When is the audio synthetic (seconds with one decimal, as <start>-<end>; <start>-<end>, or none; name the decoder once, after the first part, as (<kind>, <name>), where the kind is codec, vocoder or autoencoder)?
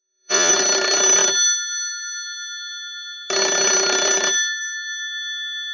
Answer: 0.0-0.5 (vocoder, Vocos)